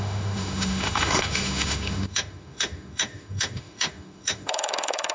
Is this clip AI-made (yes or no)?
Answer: yes